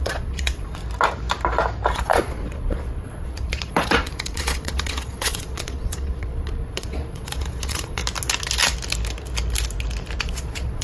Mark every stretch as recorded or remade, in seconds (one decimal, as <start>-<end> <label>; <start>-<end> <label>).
0.0-0.8 remade; 0.8-1.9 recorded; 1.9-8.0 remade; 8.0-10.2 recorded; 10.2-10.8 remade